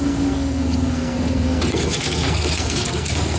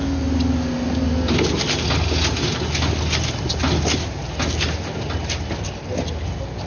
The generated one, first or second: first